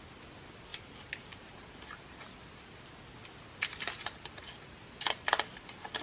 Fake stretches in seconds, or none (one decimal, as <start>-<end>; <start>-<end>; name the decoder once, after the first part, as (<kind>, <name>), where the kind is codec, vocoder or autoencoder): 0.7-1.8 (vocoder, BigVGAN v2); 3.7-4.8